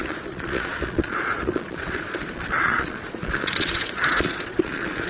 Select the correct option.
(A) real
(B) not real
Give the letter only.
B